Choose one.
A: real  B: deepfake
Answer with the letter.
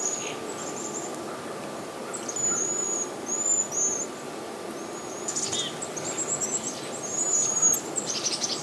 A